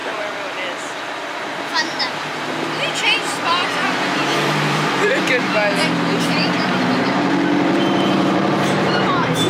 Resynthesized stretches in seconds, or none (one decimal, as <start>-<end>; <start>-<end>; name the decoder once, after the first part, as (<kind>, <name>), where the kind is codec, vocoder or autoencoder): 3.2-5.4 (vocoder, BigVGAN v2); 6.2-9.5